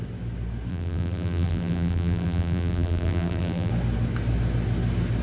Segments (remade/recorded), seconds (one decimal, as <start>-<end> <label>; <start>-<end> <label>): 0.0-0.7 recorded; 0.7-3.7 remade; 3.7-5.2 recorded